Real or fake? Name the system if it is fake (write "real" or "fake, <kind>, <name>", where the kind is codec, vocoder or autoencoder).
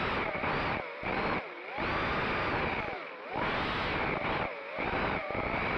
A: real